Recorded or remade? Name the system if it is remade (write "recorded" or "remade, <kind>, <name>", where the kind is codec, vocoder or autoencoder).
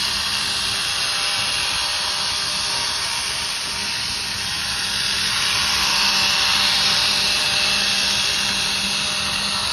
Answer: recorded